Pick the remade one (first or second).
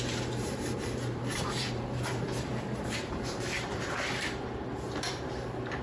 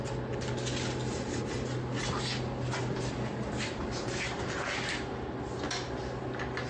first